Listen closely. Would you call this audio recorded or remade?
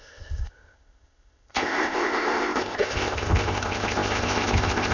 remade